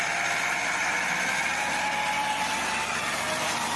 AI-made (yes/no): no